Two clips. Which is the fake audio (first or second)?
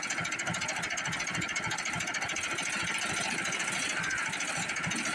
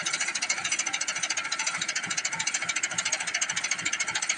second